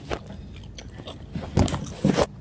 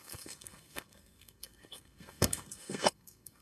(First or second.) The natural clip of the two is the first